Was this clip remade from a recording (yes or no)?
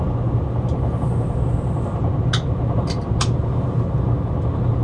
no